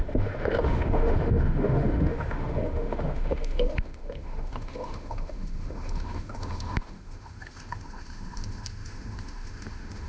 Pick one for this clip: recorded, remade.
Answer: remade